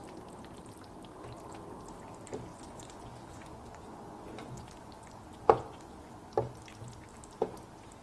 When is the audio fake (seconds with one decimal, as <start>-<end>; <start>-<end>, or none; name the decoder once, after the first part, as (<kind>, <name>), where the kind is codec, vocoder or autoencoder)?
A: 2.5-6.3 (vocoder, Vocos)